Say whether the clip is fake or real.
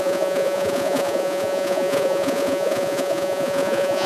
fake